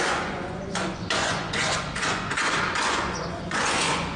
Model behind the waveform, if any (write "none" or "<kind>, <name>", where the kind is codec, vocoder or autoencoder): vocoder, Vocos